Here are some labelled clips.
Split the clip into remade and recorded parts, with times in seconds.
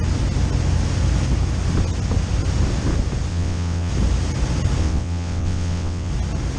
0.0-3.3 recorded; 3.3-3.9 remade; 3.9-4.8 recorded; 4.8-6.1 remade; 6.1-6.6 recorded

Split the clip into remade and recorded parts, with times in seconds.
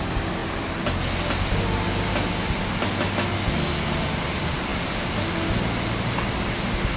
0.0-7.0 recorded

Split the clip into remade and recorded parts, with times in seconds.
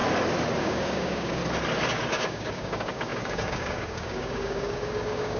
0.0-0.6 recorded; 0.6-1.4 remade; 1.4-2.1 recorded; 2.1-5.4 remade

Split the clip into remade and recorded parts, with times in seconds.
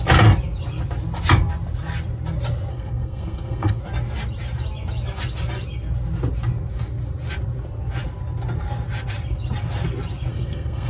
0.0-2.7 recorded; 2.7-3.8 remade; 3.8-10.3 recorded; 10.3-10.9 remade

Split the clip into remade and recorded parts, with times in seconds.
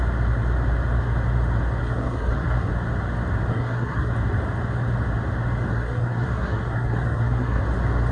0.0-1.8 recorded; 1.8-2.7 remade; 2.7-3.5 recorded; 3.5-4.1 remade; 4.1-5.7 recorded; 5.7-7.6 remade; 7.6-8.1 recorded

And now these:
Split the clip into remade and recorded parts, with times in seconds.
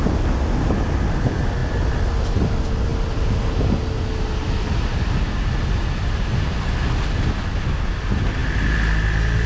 0.0-9.5 recorded